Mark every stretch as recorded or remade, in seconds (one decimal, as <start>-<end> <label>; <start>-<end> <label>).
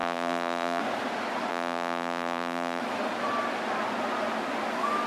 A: 0.0-0.8 remade; 0.8-1.5 recorded; 1.5-2.8 remade; 2.8-5.1 recorded